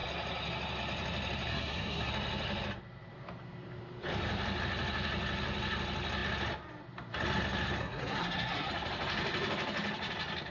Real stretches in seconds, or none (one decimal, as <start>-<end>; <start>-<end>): 0.0-1.5; 2.1-7.8; 8.7-10.5